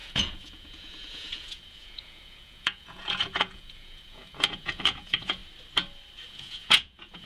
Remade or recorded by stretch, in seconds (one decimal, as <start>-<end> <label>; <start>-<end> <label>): 0.0-5.4 remade; 5.4-6.3 recorded; 6.3-7.3 remade